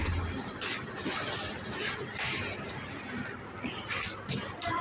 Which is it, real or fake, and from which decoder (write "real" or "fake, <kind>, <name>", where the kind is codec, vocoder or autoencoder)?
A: fake, vocoder, BigVGAN v2